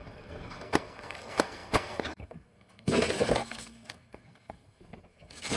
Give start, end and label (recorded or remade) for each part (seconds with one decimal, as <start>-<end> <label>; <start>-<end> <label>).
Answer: 0.0-5.6 remade

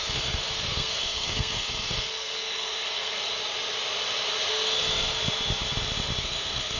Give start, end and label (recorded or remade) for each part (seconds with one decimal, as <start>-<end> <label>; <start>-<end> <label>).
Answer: 0.0-3.3 remade; 3.3-4.5 recorded; 4.5-5.2 remade; 5.2-6.2 recorded; 6.2-6.8 remade

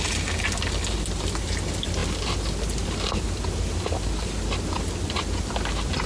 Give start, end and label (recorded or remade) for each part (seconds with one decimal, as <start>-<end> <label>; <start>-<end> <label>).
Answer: 0.0-6.1 recorded

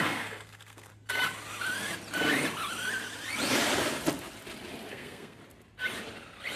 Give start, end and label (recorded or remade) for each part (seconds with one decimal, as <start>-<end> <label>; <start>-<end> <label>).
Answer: 0.0-0.9 remade; 0.9-4.9 recorded; 4.9-5.4 remade; 5.4-6.6 recorded